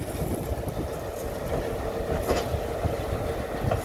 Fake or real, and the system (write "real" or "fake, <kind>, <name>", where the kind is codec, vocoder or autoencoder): real